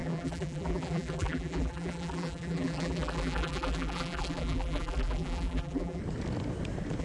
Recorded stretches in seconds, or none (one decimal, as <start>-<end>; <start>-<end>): 6.0-7.0